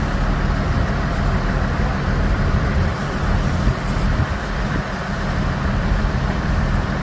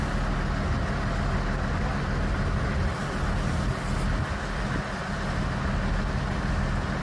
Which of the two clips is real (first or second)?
second